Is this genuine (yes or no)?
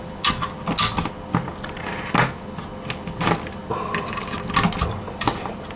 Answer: yes